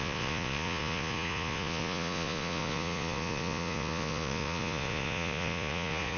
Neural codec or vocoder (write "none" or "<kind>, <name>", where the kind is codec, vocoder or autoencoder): vocoder, Vocos